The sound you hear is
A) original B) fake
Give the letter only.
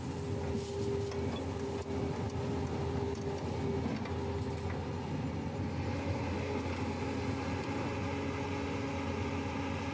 A